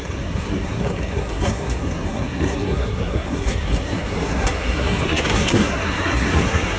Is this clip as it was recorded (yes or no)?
no